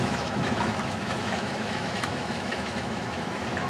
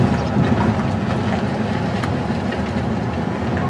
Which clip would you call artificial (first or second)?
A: first